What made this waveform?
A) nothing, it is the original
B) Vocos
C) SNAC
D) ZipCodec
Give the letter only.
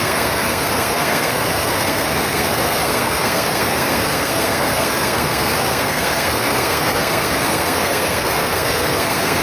C